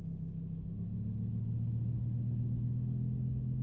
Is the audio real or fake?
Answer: real